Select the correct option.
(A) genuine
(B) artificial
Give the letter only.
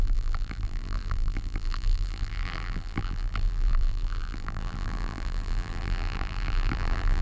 B